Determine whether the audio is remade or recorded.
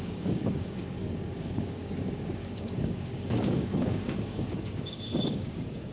remade